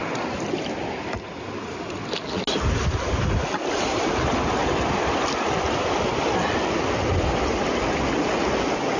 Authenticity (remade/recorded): recorded